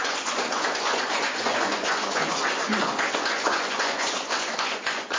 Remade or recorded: remade